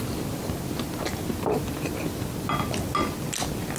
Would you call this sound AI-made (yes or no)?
no